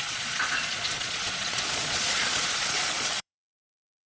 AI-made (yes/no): yes